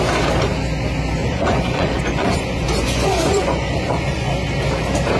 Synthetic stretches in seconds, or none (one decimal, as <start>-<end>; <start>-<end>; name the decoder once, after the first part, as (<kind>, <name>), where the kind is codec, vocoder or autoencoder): 1.2-4.3 (vocoder, Vocos)